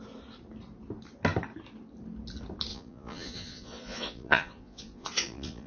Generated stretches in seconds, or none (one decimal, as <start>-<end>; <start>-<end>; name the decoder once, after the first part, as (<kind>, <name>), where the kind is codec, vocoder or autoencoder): 2.7-5.7 (vocoder, Vocos)

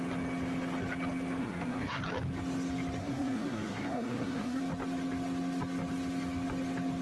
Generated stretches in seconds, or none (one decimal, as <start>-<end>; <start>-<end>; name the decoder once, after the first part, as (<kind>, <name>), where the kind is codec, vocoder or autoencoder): 1.4-2.0 (codec, SNAC); 3.0-4.6

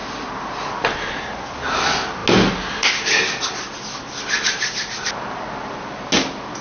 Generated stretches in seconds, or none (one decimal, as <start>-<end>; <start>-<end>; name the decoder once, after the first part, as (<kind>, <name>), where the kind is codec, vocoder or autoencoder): none

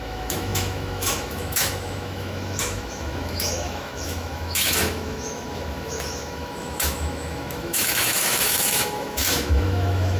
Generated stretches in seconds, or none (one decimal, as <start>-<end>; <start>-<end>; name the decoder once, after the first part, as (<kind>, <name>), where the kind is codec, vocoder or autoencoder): 0.0-10.2 (autoencoder, DAC-VAE)

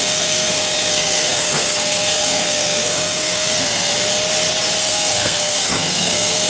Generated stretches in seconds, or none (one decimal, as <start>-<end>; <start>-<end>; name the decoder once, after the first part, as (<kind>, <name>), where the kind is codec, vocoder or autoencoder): 0.0-3.9 (codec, SNAC); 4.8-6.5

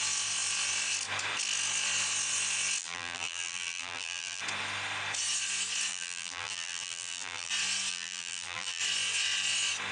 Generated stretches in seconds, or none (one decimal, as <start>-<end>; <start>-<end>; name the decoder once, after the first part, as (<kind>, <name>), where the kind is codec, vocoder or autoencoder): 2.8-4.4 (vocoder, BigVGAN v2); 5.9-7.5; 7.9-8.8

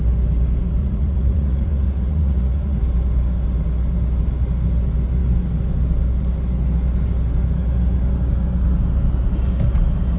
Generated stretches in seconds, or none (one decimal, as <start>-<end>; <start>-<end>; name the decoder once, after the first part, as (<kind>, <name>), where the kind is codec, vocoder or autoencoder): 0.8-2.8 (vocoder, Vocos)